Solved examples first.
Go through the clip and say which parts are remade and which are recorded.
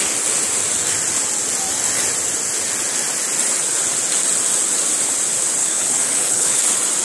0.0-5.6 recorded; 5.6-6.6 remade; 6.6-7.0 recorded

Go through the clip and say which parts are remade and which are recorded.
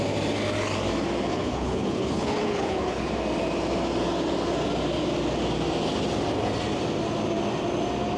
0.0-1.3 recorded; 1.3-3.1 remade; 3.1-8.2 recorded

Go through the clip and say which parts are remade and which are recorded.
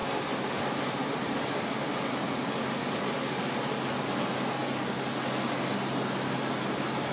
0.0-7.1 recorded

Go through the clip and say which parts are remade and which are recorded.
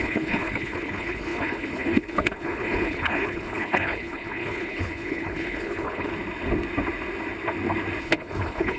0.0-6.1 remade; 6.1-8.0 recorded; 8.0-8.8 remade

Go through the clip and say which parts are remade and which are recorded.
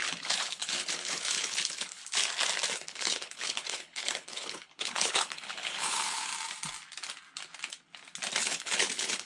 0.0-2.0 remade; 2.0-2.7 recorded; 2.7-6.3 remade; 6.3-8.4 recorded; 8.4-9.3 remade